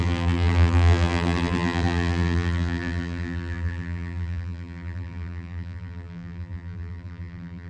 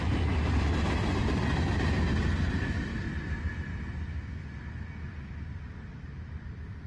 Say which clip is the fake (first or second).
first